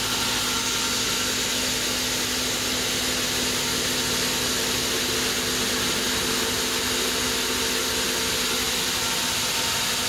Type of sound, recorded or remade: recorded